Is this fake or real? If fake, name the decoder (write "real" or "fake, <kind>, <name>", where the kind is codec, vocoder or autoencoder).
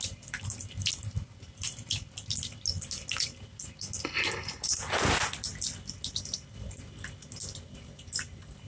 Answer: real